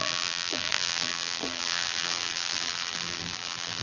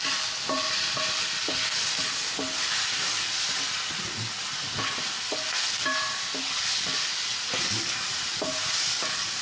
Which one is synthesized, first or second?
first